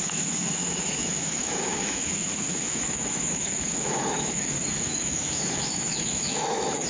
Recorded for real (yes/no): no